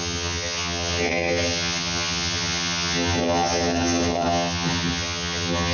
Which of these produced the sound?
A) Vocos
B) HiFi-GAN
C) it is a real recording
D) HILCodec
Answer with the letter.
B